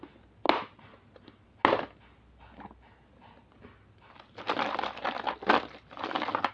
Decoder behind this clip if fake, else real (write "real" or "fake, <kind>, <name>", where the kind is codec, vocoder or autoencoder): real